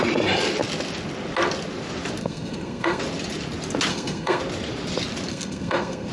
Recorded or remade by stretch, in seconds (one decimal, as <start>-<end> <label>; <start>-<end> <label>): 0.0-2.2 recorded; 2.2-3.0 remade; 3.0-3.9 recorded; 3.9-4.4 remade; 4.4-5.3 recorded; 5.3-6.1 remade